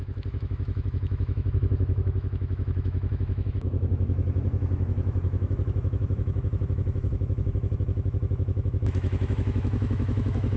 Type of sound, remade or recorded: remade